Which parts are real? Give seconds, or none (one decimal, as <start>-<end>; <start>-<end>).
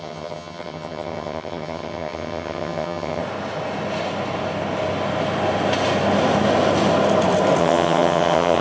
3.2-7.6